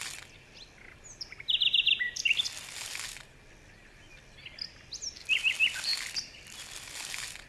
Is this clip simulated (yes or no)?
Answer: no